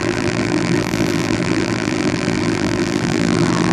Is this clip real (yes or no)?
no